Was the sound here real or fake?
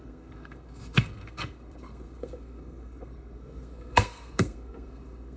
fake